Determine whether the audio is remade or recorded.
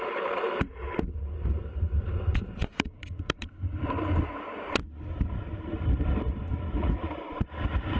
remade